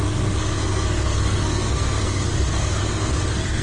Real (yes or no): no